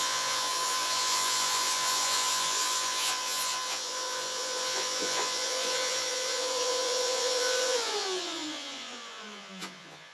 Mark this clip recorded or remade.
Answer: remade